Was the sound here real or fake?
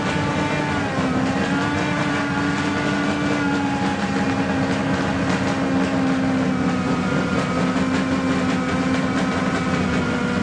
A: real